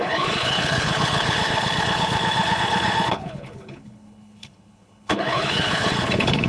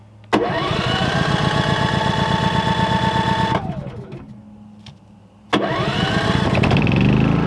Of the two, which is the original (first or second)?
second